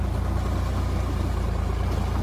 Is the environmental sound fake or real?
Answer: real